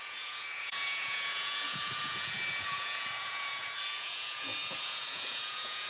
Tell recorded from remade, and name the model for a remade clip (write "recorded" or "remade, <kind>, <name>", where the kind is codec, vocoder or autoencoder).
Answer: remade, vocoder, Vocos